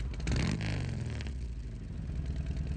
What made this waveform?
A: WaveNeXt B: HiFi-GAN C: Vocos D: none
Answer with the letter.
D